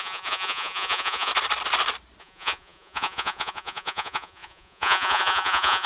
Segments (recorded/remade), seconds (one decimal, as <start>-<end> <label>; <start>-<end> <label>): 0.0-1.3 remade; 1.3-2.2 recorded; 2.2-5.9 remade